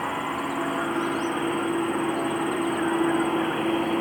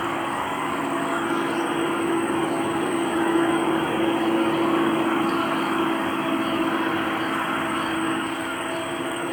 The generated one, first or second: second